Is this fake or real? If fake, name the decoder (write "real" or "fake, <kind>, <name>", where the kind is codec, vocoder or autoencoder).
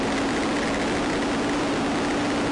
real